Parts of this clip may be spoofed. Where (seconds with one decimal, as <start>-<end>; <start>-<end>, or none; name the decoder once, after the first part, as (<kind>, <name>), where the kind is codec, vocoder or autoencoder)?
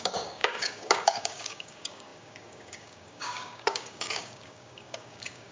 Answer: 0.0-5.5 (codec, DAC)